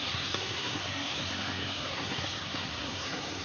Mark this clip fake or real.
fake